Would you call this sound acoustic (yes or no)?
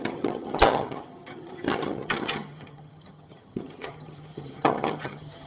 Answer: no